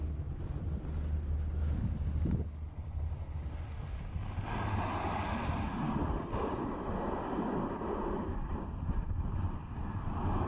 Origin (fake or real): real